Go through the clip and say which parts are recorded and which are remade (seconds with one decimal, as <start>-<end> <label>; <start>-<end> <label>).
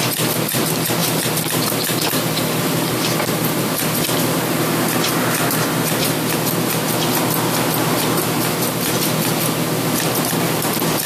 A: 0.0-1.0 recorded; 1.0-5.1 remade; 5.1-11.1 recorded